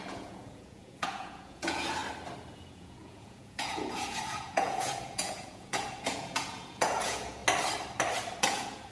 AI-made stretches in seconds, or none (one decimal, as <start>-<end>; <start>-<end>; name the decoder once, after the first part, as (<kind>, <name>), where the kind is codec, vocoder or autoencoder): 0.0-2.0 (vocoder, Vocos); 2.5-7.4; 8.4-8.9